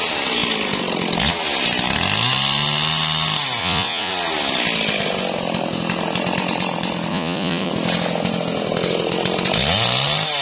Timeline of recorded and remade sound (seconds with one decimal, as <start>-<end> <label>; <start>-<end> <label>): 0.0-3.6 recorded; 3.6-4.1 remade; 4.1-7.1 recorded; 7.1-7.7 remade; 7.7-10.4 recorded